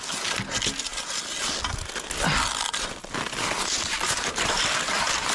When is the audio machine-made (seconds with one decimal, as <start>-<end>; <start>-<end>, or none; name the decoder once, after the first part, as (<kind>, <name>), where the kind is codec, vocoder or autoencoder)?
none